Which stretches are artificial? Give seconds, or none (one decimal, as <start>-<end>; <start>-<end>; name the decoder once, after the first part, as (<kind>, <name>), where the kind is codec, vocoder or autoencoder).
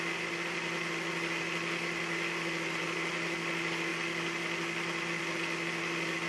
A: none